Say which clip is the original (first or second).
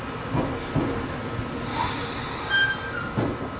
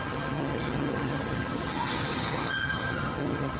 first